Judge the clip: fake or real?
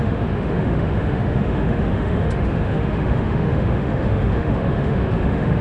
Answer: fake